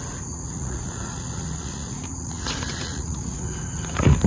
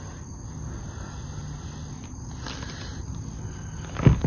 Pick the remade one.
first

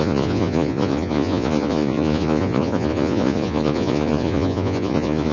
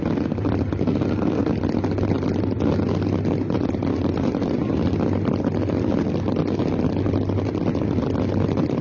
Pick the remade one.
first